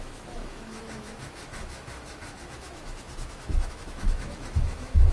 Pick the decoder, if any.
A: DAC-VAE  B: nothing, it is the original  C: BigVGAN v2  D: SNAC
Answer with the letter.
A